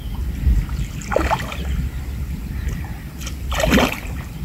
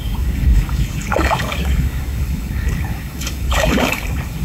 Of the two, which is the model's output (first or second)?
second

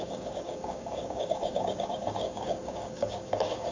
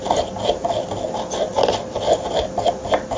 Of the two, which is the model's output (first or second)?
first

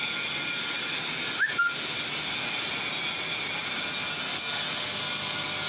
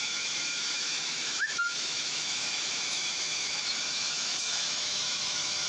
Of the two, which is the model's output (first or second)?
second